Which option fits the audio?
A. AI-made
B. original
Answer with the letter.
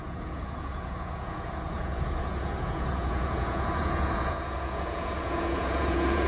A